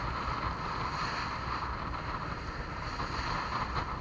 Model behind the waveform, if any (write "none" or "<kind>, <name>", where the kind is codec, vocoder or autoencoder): none